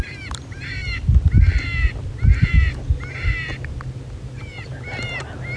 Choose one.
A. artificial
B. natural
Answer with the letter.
B